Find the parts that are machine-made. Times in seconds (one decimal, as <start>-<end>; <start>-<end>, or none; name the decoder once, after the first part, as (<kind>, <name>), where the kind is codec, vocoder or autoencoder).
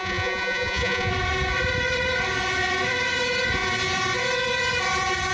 0.0-1.1 (vocoder, Vocos)